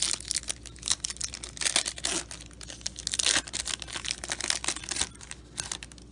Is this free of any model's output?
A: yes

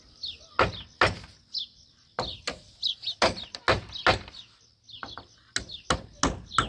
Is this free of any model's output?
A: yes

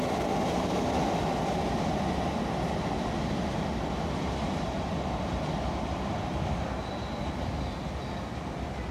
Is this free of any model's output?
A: yes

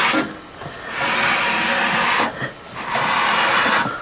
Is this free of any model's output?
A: yes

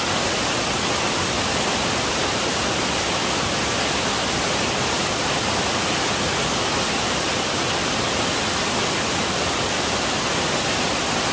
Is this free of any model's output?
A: yes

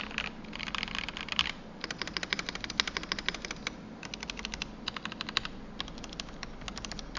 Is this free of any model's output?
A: yes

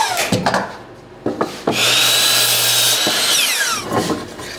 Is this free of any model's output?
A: yes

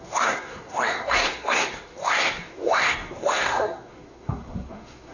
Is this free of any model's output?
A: no